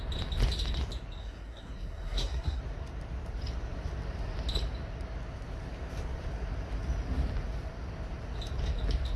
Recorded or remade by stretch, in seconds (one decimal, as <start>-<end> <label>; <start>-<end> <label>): 0.0-1.2 recorded; 1.2-2.6 remade; 2.6-9.2 recorded